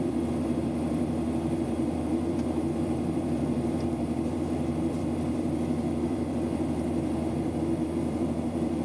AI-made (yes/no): yes